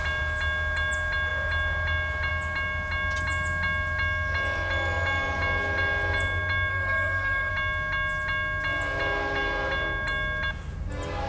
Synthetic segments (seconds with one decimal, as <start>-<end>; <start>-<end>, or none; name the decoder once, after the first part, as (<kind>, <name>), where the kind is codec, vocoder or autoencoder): 6.7-7.5 (codec, SNAC)

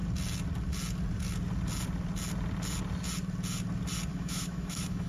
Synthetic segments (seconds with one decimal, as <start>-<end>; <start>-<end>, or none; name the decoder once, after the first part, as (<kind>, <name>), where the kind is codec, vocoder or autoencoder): 4.1-5.1 (autoencoder, DAC-VAE)

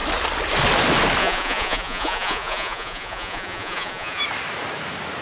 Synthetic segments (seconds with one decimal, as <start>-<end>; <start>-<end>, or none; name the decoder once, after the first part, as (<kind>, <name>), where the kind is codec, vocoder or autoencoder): 1.2-4.2 (vocoder, Vocos)

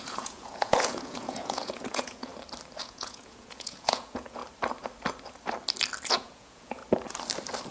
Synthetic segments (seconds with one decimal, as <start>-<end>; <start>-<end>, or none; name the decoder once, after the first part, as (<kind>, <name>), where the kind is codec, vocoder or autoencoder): 0.0-2.3 (vocoder, Vocos); 2.8-4.4; 6.1-6.8

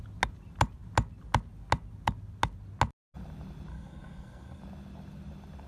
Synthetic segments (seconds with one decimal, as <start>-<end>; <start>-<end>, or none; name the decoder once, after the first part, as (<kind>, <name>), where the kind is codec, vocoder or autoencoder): 3.7-4.6 (codec, SNAC)

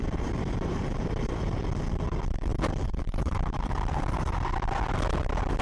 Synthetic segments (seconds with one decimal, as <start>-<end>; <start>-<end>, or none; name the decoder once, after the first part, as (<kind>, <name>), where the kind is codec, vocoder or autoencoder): 0.0-1.6 (vocoder, BigVGAN v2); 2.5-4.1

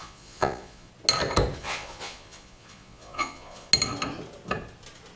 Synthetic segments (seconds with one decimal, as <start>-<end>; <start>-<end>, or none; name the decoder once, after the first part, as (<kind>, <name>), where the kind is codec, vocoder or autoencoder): 0.0-0.9 (vocoder, Vocos); 1.6-3.7

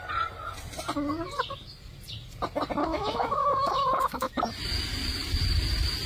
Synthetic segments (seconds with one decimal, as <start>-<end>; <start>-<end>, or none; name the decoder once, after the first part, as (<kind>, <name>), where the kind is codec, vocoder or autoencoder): 2.8-4.3 (autoencoder, DAC-VAE)